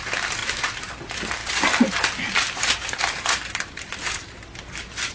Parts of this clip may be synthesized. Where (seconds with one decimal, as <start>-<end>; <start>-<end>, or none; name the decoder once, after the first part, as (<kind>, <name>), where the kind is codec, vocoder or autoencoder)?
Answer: none